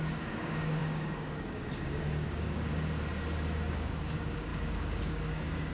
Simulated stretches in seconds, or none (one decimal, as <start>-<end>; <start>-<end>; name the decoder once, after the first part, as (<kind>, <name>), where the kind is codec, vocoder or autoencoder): 0.0-2.7 (codec, DAC); 3.7-5.7